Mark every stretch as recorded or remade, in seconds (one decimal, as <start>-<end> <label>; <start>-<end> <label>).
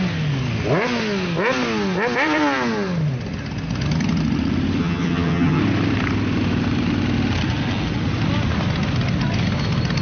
0.0-4.8 recorded; 4.8-5.6 remade; 5.6-10.0 recorded